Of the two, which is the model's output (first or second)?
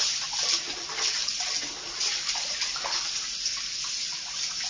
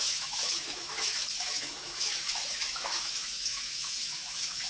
second